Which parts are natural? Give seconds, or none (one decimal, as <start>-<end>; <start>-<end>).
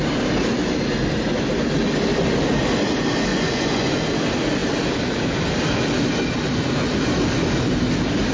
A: 0.0-3.3; 3.9-8.3